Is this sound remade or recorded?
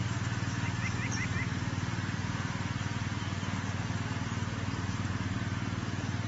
recorded